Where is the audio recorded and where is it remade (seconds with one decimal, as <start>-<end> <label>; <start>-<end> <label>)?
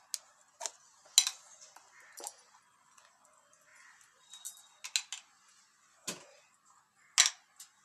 0.0-7.8 recorded